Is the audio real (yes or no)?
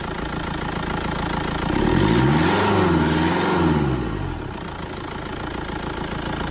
yes